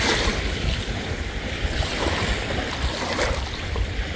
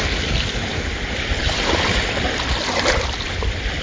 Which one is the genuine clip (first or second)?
second